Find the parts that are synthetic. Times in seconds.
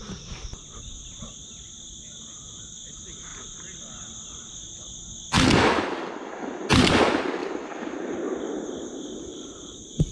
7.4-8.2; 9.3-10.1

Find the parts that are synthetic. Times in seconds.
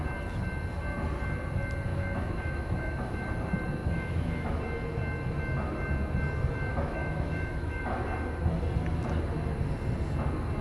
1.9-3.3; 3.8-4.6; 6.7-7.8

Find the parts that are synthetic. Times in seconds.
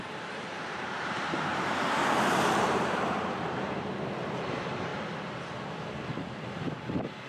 0.0-4.9; 6.1-7.3